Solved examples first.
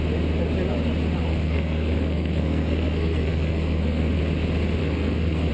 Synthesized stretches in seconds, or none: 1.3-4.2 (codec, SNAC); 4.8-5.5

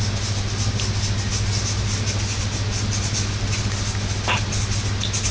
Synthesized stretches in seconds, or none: none

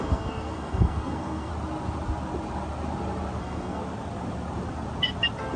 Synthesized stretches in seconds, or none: 0.0-1.5 (codec, SNAC); 3.4-3.8

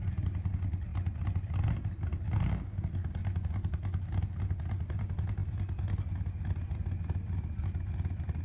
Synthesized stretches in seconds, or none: none

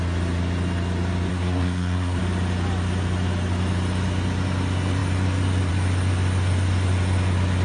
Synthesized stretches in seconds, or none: 1.3-2.2 (codec, SNAC)